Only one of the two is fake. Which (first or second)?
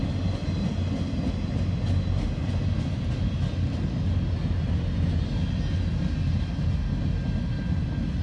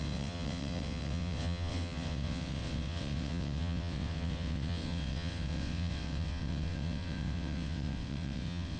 second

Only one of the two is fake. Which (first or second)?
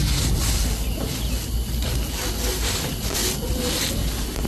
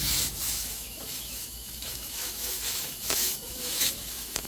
second